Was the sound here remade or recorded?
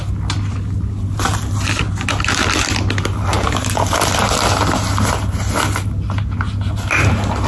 recorded